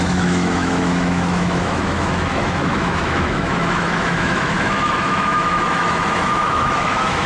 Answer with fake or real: fake